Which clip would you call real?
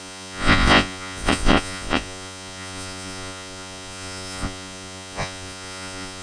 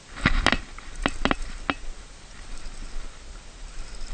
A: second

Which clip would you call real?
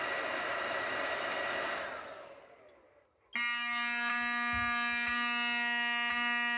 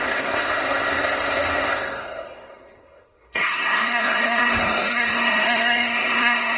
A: first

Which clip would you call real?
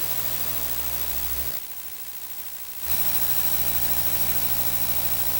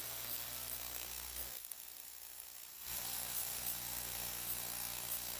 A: first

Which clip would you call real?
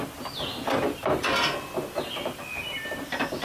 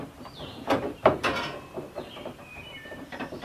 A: first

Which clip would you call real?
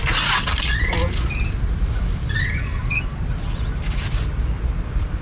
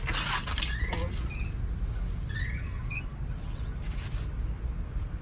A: second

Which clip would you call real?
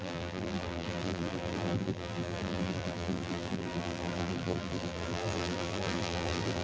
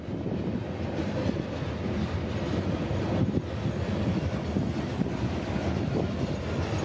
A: second